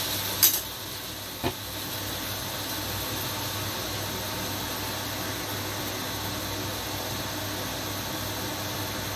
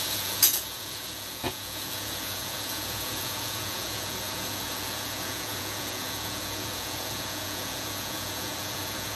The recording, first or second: first